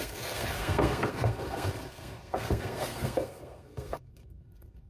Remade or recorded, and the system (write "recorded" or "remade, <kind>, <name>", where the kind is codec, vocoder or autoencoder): remade, codec, SNAC